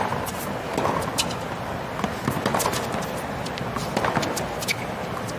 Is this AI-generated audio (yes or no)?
no